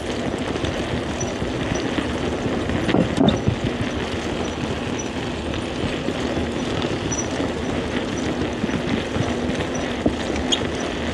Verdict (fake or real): real